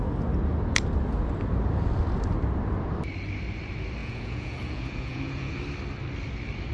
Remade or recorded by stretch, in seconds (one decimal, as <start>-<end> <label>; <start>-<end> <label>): 0.0-4.0 recorded; 4.0-5.6 remade; 5.6-6.7 recorded